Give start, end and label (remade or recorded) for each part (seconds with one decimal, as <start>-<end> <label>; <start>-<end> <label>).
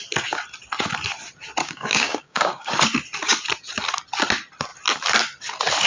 0.0-1.6 recorded; 1.6-2.7 remade; 2.7-5.9 recorded